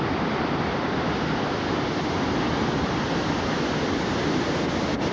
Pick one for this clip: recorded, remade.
recorded